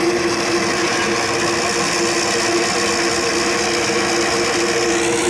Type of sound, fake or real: real